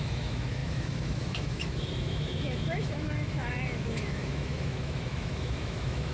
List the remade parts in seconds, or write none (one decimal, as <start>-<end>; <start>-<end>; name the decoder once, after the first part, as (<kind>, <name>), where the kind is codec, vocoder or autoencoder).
0.0-6.1 (autoencoder, DAC-VAE)